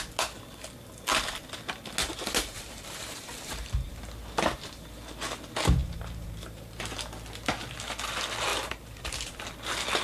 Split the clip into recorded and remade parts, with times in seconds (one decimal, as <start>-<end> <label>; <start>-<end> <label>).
0.0-2.0 recorded; 2.0-3.9 remade; 3.9-5.8 recorded; 5.8-6.8 remade; 6.8-8.5 recorded; 8.5-9.1 remade; 9.1-10.0 recorded